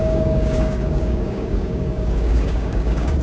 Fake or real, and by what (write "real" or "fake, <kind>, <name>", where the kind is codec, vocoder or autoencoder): fake, codec, DAC